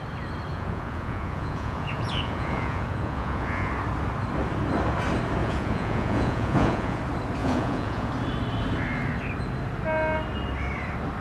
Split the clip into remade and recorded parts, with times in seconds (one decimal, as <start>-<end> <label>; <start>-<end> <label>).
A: 0.0-0.5 recorded; 0.5-3.7 remade; 3.7-5.4 recorded; 5.4-7.0 remade; 7.0-7.4 recorded; 7.4-8.1 remade; 8.1-11.2 recorded